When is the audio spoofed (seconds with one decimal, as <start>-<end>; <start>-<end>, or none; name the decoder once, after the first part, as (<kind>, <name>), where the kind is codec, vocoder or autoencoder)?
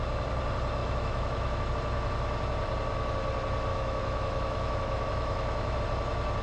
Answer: 0.8-1.7 (autoencoder, DAC-VAE); 3.7-5.8